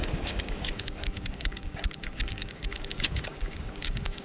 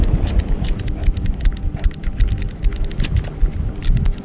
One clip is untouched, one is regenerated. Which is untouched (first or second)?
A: second